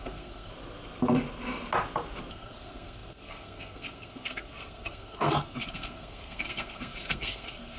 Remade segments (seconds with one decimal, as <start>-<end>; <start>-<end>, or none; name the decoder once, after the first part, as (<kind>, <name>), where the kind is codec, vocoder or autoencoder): 0.0-0.5 (codec, SNAC); 2.3-7.8